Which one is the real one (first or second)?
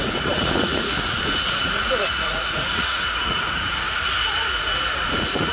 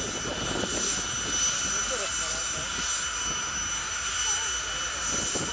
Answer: second